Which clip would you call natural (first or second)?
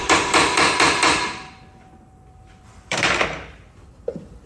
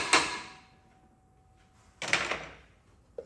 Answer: second